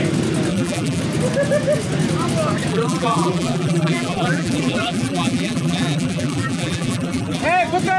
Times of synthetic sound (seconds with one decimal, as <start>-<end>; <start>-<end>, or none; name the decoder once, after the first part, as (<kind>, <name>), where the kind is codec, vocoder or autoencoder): 0.5-1.0 (vocoder, BigVGAN v2); 2.7-7.4